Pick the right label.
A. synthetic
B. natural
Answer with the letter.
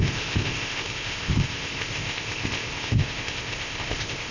A